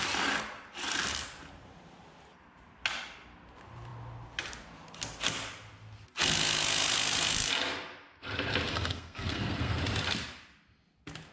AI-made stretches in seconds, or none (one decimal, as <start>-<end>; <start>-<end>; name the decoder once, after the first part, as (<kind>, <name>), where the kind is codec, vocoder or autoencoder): 8.7-9.8 (codec, SNAC)